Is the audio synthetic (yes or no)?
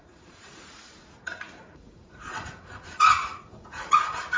yes